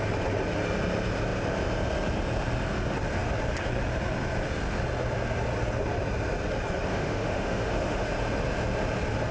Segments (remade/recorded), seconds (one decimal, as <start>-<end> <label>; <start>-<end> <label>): 0.0-6.9 recorded; 6.9-8.1 remade; 8.1-9.3 recorded